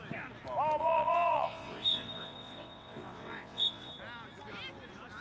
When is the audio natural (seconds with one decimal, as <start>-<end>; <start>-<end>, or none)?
0.0-0.8; 3.9-5.2